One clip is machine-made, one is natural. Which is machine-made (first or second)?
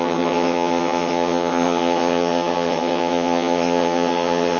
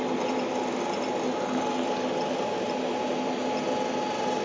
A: first